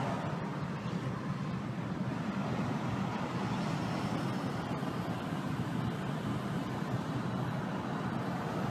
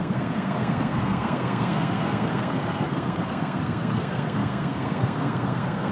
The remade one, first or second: second